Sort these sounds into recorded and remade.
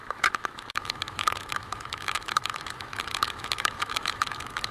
remade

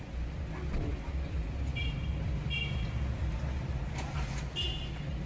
recorded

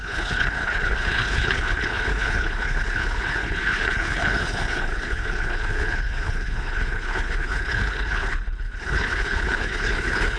remade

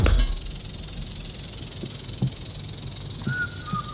recorded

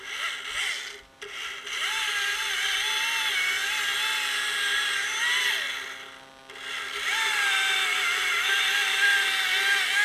recorded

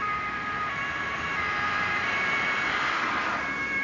recorded